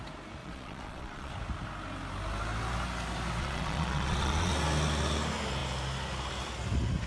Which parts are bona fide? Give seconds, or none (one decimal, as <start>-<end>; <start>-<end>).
0.0-0.4; 1.3-3.4; 4.5-7.1